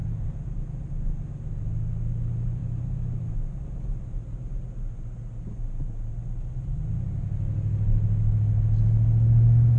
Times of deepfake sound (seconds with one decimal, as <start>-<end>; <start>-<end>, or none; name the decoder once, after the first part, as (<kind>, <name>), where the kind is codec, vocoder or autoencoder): 0.0-0.9 (vocoder, BigVGAN v2); 2.6-3.3